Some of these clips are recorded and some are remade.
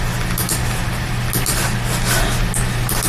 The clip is recorded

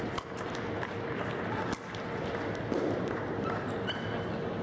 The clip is recorded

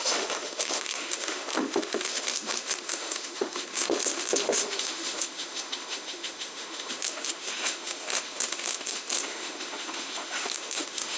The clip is remade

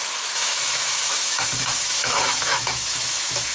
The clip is remade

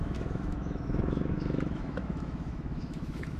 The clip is remade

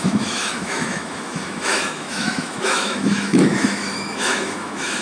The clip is remade